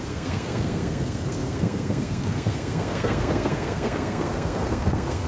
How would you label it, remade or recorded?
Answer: remade